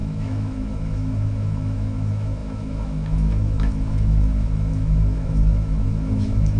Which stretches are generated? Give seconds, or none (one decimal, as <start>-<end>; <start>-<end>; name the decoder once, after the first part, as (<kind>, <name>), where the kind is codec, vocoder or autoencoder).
0.0-6.6 (autoencoder, DAC-VAE)